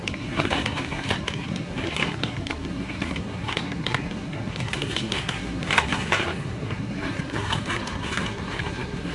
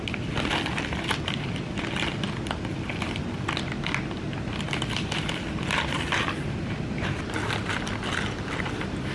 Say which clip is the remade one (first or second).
first